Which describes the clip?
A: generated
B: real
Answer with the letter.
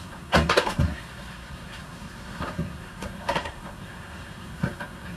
A